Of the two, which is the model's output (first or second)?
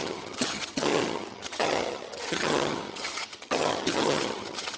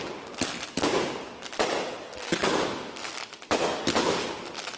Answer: first